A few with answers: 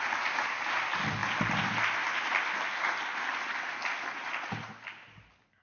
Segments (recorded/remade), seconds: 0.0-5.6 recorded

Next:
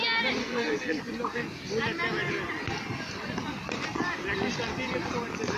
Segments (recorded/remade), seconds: 0.0-0.4 recorded; 0.4-1.0 remade; 1.0-5.6 recorded